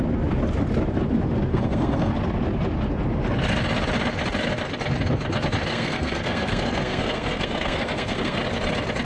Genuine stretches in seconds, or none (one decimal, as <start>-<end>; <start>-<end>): 0.0-1.5; 2.1-5.7; 8.4-9.0